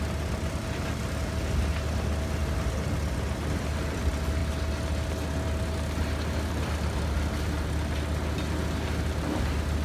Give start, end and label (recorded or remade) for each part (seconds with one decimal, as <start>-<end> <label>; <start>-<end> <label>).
0.0-9.8 recorded